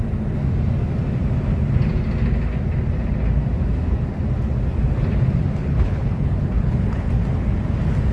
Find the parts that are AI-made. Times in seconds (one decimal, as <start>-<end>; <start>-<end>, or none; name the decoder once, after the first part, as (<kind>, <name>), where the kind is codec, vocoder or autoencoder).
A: 5.6-7.1 (codec, HILCodec)